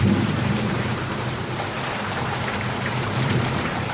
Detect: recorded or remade remade